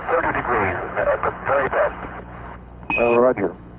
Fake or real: fake